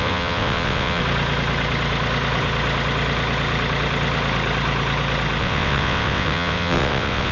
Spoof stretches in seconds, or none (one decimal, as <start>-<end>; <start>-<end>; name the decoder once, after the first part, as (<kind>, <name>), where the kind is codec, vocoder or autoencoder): 0.0-1.0 (vocoder, WaveNeXt); 5.4-7.3